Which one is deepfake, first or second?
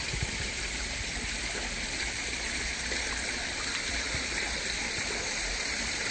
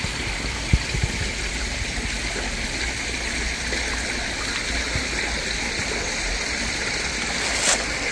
first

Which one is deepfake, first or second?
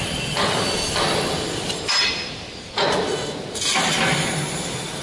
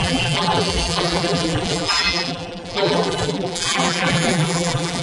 second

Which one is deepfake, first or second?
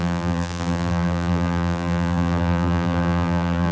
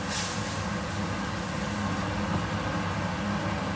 first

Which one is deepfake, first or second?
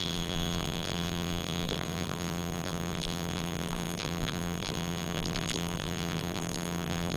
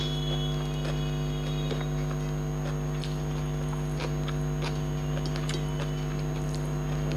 first